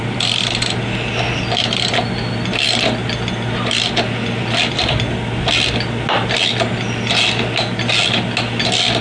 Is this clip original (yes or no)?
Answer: yes